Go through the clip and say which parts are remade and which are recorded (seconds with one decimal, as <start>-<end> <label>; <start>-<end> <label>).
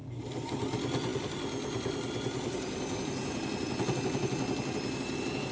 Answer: 0.0-5.5 recorded